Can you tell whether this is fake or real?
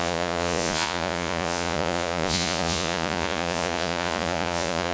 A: fake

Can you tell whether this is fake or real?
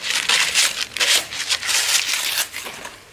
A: real